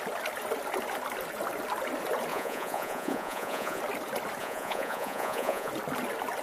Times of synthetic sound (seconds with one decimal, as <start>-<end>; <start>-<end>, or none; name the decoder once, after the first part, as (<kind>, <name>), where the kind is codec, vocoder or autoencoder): 2.3-3.8 (vocoder, Vocos); 4.4-5.7